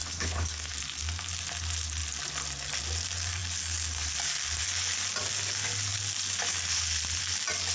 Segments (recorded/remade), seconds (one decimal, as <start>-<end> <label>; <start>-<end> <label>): 0.0-0.7 remade; 0.7-7.7 recorded